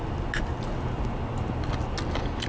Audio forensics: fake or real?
real